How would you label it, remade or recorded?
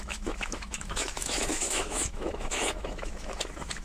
remade